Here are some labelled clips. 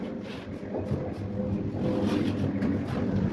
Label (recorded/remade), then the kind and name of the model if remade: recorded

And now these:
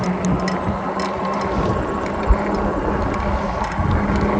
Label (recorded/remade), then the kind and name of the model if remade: recorded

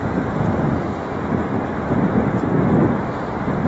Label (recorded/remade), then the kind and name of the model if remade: recorded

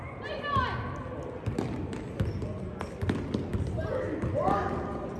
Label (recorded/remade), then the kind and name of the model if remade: recorded